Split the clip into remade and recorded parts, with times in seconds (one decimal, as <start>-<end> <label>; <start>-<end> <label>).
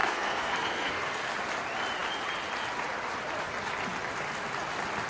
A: 0.0-1.3 remade; 1.3-5.1 recorded